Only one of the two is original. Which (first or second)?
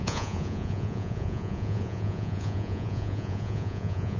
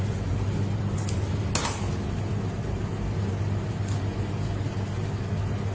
second